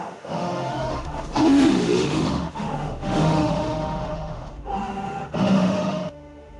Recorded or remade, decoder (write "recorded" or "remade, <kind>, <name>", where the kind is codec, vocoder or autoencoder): remade, autoencoder, DAC-VAE